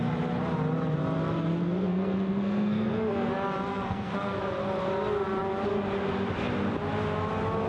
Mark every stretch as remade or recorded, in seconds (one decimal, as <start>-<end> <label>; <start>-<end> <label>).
0.0-1.5 recorded; 1.5-3.3 remade; 3.3-3.7 recorded; 3.7-4.4 remade; 4.4-7.7 recorded